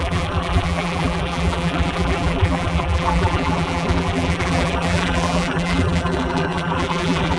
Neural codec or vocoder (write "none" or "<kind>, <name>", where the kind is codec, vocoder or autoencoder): vocoder, BigVGAN v2